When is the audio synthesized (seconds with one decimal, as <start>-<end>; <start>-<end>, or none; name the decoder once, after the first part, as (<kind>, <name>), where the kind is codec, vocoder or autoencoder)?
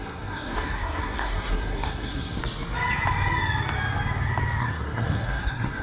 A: 0.0-2.4 (codec, SNAC); 4.6-5.8